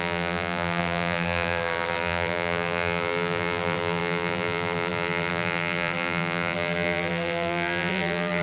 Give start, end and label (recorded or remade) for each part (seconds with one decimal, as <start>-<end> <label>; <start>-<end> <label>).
0.0-8.4 remade